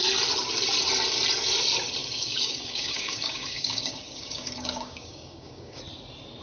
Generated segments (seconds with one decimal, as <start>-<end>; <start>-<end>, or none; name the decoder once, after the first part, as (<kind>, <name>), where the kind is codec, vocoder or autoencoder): 2.0-5.8 (codec, DAC)